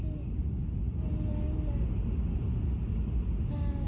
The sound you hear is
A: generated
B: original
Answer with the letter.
B